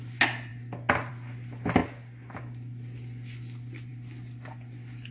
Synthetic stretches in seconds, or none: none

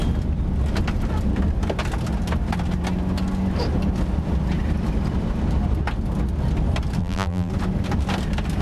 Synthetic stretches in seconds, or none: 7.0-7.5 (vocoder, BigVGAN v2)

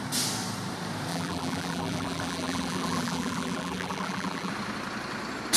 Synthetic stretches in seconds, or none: 1.1-4.5 (vocoder, BigVGAN v2)